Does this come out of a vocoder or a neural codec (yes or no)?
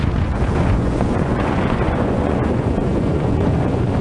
yes